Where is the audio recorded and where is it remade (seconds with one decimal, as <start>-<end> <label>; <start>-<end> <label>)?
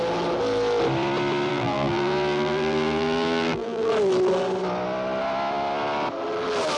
0.0-1.5 recorded; 1.5-3.9 remade; 3.9-6.8 recorded